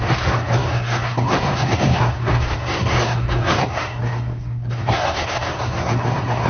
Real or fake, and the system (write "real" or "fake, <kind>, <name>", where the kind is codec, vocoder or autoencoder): fake, codec, SNAC